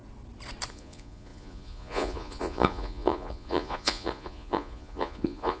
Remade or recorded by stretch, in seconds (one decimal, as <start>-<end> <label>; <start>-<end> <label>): 0.0-0.7 recorded; 0.7-5.6 remade